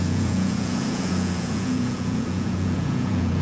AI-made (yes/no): yes